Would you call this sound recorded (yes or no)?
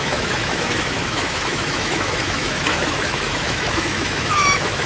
no